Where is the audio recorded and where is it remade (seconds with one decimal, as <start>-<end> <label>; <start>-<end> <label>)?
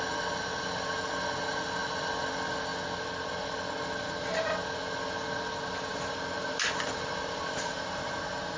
0.0-5.9 recorded; 5.9-8.2 remade; 8.2-8.6 recorded